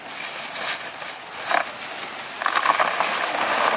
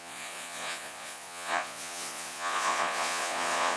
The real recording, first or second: first